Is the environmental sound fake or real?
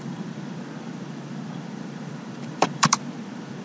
fake